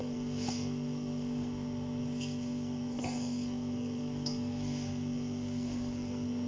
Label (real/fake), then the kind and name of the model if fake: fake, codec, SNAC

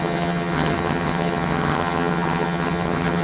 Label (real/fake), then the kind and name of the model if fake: fake, vocoder, HiFi-GAN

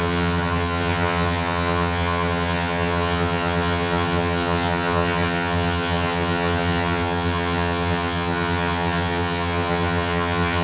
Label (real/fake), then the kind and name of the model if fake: fake, vocoder, HiFi-GAN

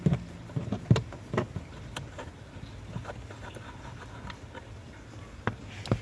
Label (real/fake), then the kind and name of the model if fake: real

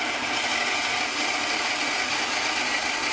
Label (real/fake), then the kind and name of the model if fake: real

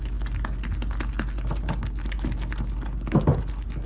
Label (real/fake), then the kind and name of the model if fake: real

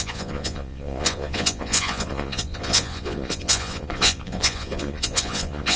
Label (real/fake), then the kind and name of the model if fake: fake, vocoder, Vocos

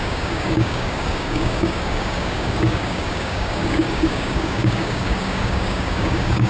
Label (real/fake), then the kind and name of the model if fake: fake, codec, DAC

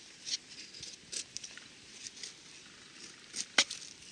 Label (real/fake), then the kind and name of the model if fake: real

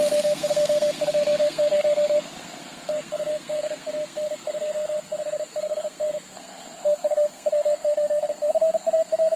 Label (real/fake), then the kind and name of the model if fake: fake, codec, SNAC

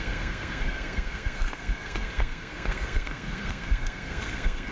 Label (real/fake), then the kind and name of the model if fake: fake, codec, SNAC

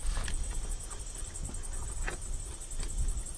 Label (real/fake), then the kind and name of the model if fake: real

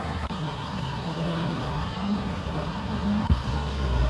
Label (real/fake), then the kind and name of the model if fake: fake, codec, SNAC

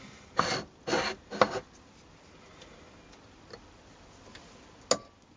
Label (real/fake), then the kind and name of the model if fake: real